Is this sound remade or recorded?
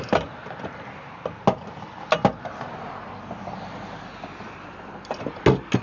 recorded